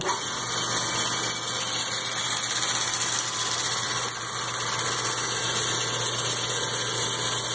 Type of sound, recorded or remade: recorded